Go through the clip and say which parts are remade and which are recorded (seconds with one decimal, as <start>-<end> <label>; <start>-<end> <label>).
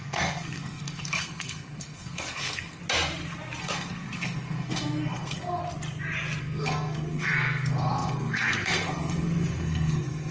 0.0-2.8 remade; 2.8-3.6 recorded; 3.6-5.6 remade; 5.6-6.4 recorded; 6.4-10.3 remade